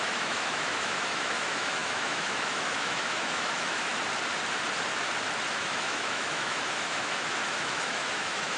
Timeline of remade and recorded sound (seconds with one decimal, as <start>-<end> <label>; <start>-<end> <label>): 0.0-3.9 remade; 3.9-5.5 recorded; 5.5-8.6 remade